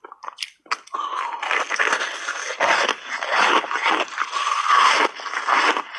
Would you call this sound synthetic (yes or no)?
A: no